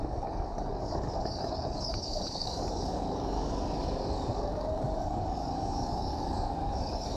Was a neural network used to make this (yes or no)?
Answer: yes